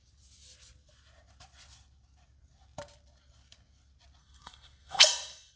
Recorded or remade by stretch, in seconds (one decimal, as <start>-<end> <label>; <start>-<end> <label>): 0.0-4.2 recorded; 4.2-5.6 remade